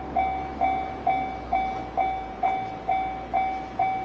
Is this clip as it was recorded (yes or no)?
yes